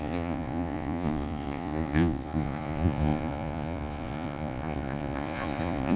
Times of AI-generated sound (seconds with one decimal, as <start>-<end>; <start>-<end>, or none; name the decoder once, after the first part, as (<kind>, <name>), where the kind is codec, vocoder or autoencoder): 0.0-6.0 (vocoder, Vocos)